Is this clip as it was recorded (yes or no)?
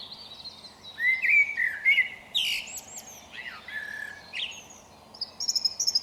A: yes